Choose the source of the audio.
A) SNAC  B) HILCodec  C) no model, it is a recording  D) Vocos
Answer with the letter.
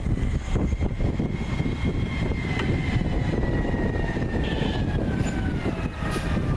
C